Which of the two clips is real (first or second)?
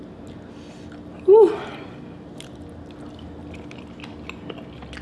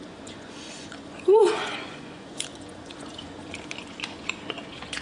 first